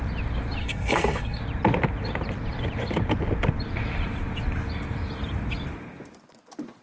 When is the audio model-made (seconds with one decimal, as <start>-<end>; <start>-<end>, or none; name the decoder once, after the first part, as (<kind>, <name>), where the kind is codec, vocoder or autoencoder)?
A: 0.6-1.4 (codec, SNAC)